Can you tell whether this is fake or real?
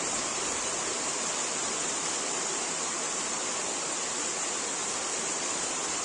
fake